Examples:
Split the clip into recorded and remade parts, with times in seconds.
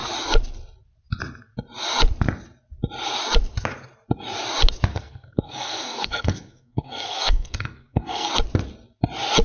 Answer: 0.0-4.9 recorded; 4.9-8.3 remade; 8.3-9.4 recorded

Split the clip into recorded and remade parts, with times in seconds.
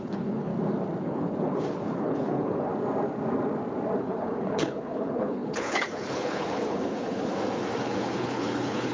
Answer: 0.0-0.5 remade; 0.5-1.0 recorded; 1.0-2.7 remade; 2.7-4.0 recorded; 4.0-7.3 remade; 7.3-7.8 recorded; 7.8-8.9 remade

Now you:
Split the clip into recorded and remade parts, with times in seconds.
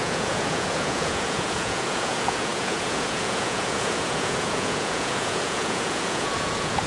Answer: 0.0-6.9 remade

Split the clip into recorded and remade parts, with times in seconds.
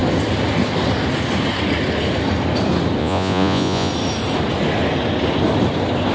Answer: 0.0-3.0 recorded; 3.0-3.9 remade; 3.9-6.1 recorded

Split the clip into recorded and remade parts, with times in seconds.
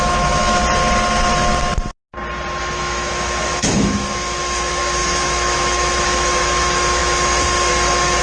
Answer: 0.0-0.6 remade; 0.6-2.6 recorded; 2.6-8.2 remade